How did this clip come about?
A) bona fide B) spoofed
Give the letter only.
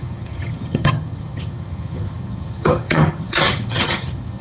B